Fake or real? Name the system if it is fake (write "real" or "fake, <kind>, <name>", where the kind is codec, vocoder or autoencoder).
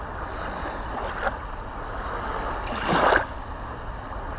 real